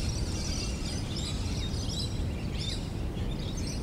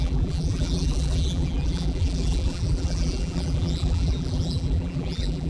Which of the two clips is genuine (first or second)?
first